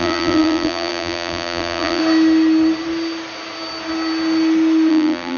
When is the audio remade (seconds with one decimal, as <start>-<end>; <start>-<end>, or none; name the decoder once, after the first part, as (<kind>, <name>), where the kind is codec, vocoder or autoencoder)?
0.0-2.0 (vocoder, BigVGAN v2); 4.9-5.4